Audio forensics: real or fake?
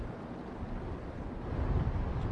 real